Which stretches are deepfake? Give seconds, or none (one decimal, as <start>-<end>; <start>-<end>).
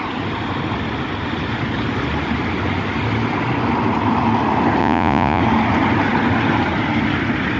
4.8-5.4